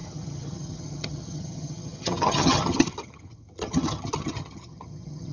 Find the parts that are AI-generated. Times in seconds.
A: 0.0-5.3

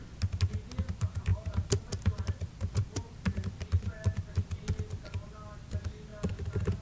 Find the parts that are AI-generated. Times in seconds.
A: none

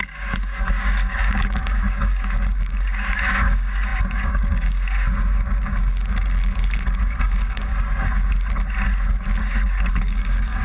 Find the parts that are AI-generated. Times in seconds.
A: 0.0-7.7; 9.4-10.6

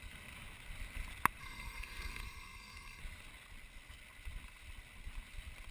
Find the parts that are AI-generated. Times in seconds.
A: 1.4-3.0